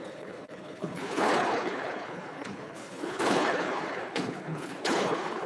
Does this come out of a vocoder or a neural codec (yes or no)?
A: yes